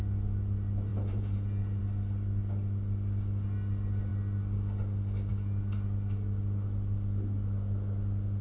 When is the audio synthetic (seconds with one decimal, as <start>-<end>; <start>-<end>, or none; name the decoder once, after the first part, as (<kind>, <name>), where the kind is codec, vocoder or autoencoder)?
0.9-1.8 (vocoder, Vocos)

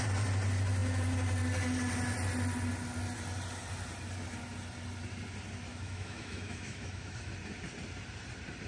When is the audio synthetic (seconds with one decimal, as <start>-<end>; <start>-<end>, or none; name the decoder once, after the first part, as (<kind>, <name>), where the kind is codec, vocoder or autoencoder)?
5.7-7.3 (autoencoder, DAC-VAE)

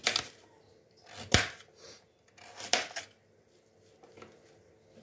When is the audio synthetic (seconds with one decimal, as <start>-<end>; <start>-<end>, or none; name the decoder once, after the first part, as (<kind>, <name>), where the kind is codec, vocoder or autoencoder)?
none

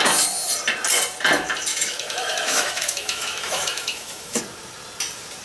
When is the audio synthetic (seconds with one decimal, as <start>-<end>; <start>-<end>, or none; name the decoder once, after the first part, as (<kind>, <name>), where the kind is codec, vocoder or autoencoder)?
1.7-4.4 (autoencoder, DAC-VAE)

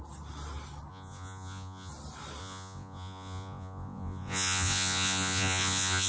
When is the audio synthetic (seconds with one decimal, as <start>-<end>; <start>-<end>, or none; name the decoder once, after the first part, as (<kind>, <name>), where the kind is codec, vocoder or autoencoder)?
0.9-1.9 (vocoder, Vocos); 2.4-6.1

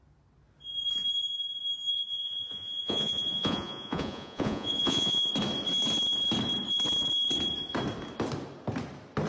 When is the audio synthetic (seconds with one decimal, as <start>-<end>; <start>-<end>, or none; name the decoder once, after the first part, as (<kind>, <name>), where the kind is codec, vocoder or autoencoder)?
1.9-5.3 (vocoder, Vocos)